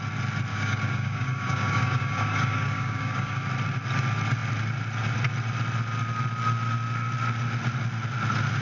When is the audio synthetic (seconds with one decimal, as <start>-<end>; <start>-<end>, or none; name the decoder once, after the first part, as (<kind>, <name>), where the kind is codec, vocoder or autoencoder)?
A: 0.5-3.4 (codec, DAC)